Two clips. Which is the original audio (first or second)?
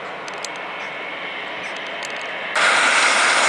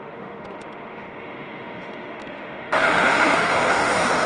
first